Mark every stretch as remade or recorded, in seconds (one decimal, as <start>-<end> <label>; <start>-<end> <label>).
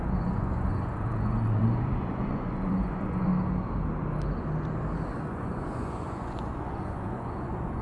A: 0.0-3.3 remade; 3.3-5.1 recorded; 5.1-7.8 remade